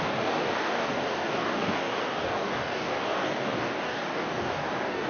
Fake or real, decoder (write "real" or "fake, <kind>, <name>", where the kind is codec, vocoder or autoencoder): fake, codec, DAC